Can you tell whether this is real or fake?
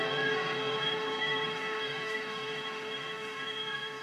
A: fake